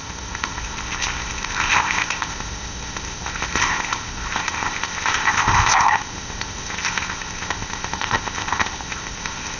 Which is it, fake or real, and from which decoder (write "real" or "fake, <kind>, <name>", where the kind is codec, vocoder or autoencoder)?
fake, codec, ZipCodec